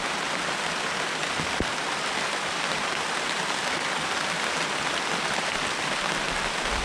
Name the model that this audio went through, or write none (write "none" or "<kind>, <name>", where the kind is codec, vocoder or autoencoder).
none